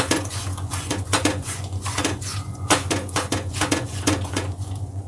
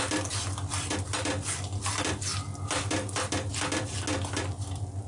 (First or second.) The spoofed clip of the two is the first